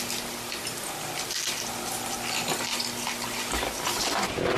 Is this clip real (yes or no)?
yes